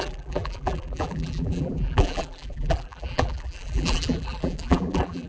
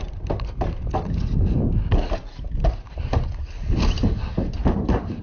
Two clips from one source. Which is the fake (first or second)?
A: first